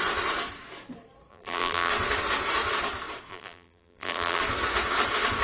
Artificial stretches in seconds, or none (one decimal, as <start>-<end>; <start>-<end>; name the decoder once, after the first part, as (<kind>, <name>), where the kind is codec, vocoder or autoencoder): 1.3-1.9 (vocoder, BigVGAN v2); 3.3-4.4